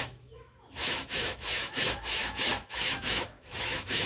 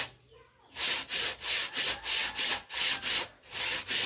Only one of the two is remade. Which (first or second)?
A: first